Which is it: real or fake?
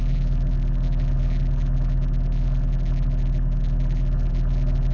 fake